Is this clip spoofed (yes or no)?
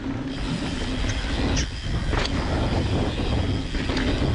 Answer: no